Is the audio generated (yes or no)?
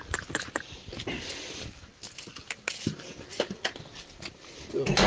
no